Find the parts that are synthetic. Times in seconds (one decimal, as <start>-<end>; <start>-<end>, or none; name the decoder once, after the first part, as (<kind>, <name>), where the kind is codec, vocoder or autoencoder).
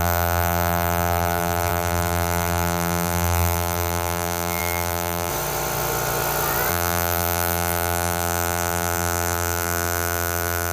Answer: 0.0-5.3 (vocoder, BigVGAN v2); 6.7-10.7